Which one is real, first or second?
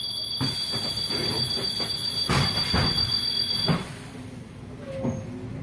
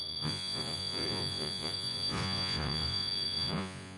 first